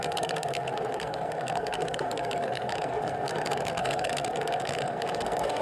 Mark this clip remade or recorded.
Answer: remade